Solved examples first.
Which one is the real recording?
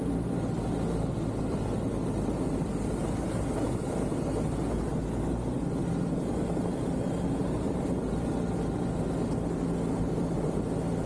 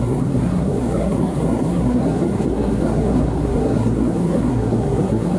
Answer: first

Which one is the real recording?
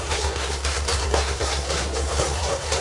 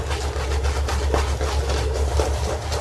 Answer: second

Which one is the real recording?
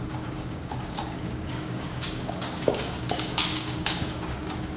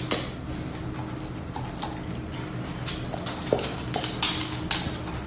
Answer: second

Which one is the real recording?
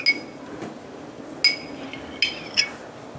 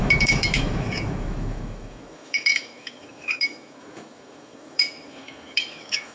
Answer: first